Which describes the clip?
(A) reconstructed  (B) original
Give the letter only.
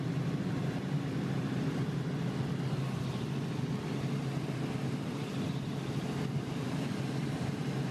A